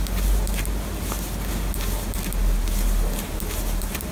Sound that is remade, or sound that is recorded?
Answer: recorded